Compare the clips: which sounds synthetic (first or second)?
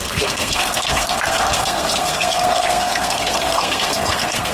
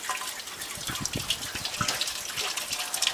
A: first